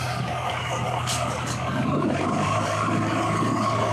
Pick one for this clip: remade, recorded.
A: remade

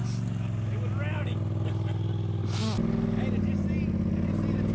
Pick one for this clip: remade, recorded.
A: recorded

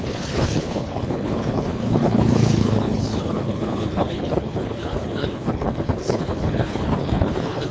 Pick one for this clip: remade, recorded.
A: remade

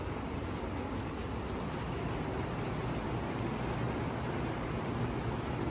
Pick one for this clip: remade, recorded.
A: recorded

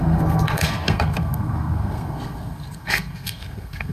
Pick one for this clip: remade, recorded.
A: remade